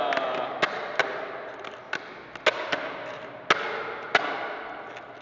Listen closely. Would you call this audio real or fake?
real